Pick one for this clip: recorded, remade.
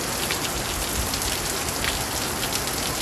recorded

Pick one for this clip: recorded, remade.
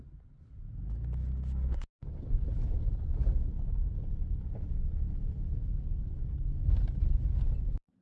recorded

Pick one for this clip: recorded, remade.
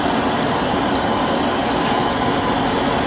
recorded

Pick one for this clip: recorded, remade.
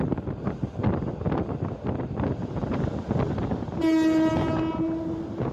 recorded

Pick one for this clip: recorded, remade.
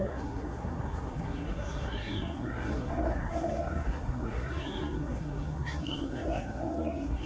remade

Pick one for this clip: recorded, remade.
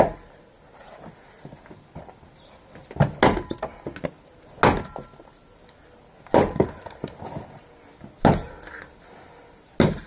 recorded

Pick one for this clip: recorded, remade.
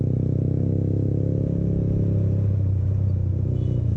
recorded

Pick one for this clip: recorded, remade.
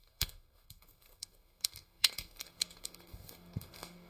remade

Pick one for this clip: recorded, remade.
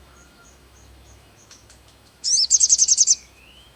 remade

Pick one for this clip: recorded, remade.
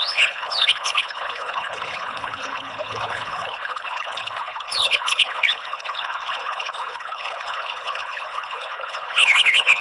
remade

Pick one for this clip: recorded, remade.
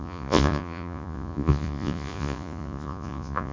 remade